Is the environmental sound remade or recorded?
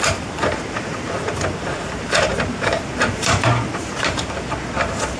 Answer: remade